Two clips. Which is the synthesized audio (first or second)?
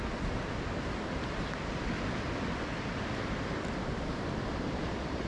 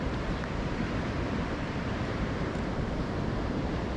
second